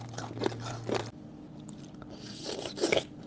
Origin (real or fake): real